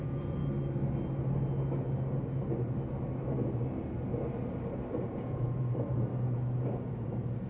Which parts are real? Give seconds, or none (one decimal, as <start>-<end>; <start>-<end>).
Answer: 0.4-4.9